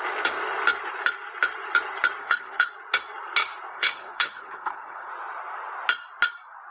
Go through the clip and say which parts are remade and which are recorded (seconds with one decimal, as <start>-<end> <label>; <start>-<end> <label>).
0.0-2.2 recorded; 2.2-2.7 remade; 2.7-3.7 recorded; 3.7-5.1 remade; 5.1-6.7 recorded